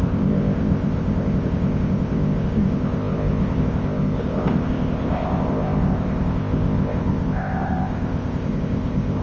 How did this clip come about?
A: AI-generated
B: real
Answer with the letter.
A